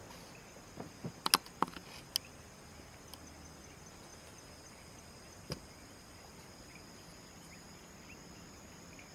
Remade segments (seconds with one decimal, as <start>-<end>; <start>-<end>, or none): 4.1-7.9